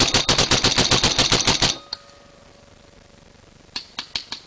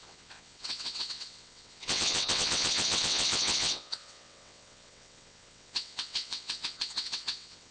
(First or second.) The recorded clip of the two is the first